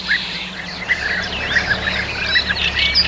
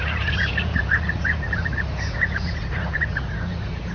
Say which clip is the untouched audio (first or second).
first